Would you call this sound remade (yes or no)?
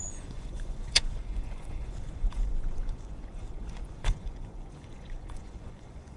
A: yes